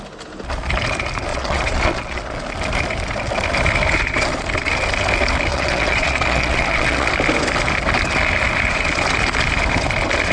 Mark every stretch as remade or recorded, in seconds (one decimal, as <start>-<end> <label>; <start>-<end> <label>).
0.0-1.3 recorded; 1.3-2.2 remade; 2.2-5.5 recorded; 5.5-7.1 remade; 7.1-10.3 recorded